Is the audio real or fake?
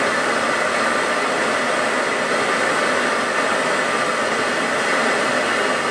real